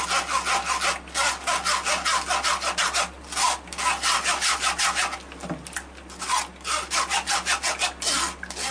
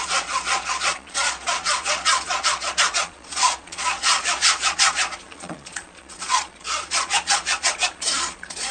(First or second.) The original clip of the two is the first